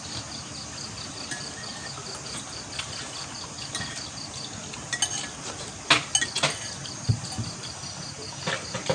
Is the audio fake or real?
real